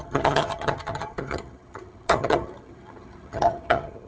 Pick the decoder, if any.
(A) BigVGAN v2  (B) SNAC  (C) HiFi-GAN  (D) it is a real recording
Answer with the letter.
C